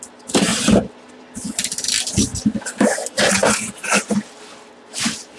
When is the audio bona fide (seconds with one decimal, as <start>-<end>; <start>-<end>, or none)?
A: 0.0-5.4